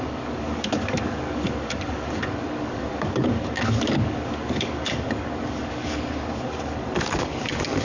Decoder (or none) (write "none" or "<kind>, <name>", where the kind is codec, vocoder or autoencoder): codec, DAC